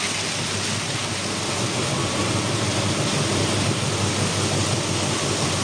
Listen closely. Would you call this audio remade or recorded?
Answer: recorded